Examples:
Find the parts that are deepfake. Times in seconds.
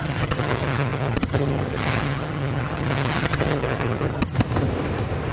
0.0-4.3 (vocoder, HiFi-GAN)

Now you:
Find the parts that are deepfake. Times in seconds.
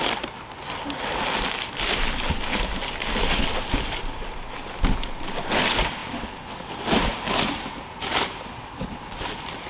none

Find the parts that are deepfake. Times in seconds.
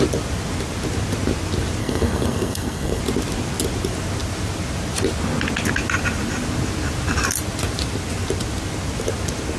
1.8-3.0 (codec, SNAC)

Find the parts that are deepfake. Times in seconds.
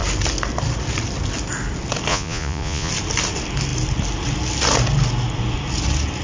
2.1-2.9 (vocoder, Vocos)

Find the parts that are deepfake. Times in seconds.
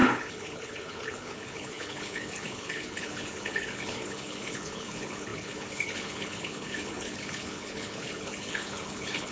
0.0-9.3 (codec, HILCodec)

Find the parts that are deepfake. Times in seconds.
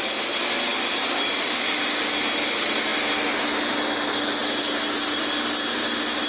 none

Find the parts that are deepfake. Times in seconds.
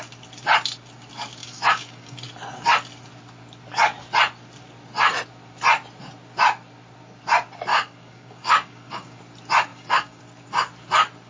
1.4-2.2 (codec, DAC); 7.7-9.2; 9.7-10.2